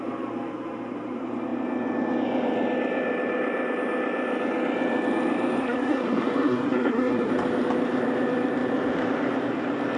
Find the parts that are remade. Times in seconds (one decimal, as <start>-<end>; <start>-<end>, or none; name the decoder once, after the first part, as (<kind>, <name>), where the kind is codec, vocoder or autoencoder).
5.6-7.3 (codec, SNAC)